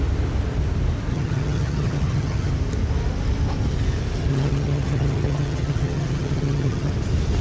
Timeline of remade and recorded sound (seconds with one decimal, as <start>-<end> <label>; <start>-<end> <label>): 0.0-1.1 recorded; 1.1-2.5 remade; 2.5-4.3 recorded; 4.3-6.9 remade; 6.9-7.4 recorded